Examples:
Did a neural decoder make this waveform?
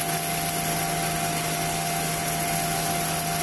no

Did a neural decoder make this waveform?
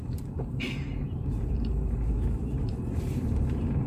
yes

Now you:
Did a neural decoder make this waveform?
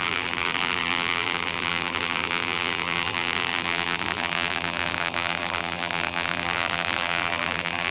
yes